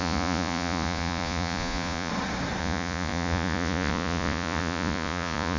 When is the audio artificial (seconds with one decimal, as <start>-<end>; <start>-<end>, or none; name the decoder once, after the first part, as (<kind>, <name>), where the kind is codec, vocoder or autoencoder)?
0.0-2.1 (vocoder, Vocos); 2.6-5.6